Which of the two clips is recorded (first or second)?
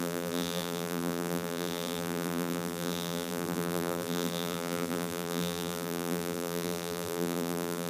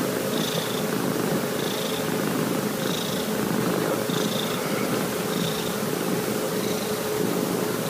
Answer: second